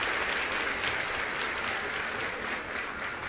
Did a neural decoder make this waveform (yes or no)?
no